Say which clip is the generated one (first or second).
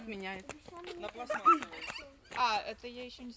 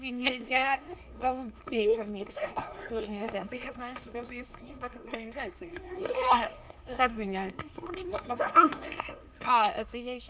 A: second